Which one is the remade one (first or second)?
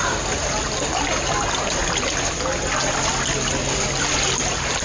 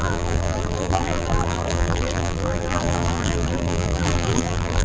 second